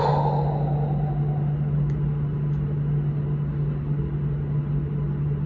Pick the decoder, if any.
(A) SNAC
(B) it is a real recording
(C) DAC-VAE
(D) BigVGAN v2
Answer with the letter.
B